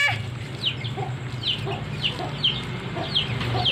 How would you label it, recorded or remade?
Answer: recorded